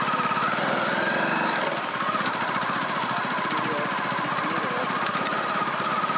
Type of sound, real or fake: real